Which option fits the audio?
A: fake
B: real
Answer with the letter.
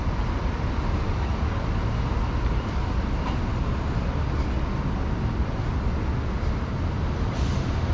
B